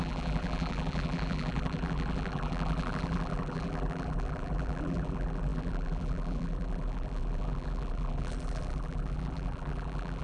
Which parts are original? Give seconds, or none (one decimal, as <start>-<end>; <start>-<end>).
none